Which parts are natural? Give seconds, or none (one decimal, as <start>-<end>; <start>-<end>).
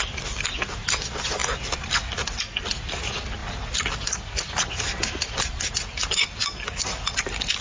0.0-7.6